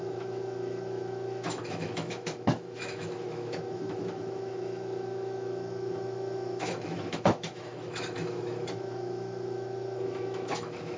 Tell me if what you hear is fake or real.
fake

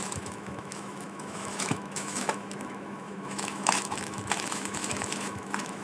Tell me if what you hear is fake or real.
fake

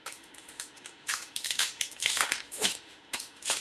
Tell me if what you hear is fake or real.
fake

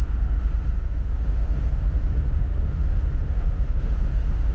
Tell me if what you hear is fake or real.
fake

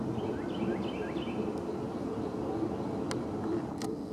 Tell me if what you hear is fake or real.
real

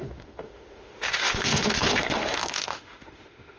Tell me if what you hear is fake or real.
fake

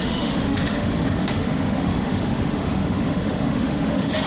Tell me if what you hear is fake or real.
fake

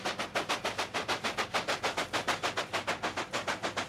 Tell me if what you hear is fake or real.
real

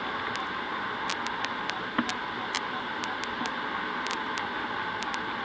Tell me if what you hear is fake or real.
real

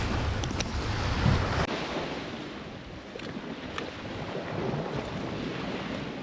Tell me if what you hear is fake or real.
real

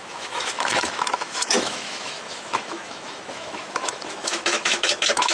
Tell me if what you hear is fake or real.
fake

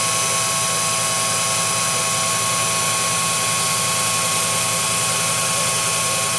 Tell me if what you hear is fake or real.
real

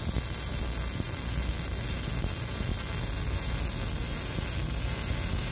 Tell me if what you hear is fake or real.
real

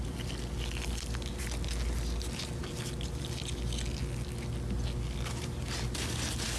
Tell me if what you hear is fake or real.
real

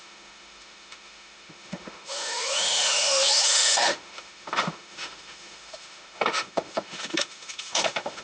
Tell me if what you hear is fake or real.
fake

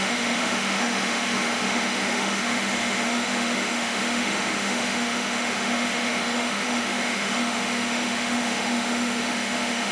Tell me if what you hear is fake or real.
fake